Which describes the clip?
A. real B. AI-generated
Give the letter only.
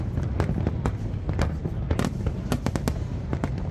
A